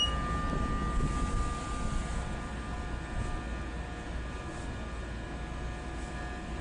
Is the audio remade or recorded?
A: recorded